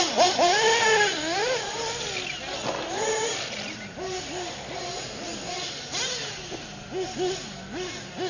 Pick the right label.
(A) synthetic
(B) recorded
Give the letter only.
B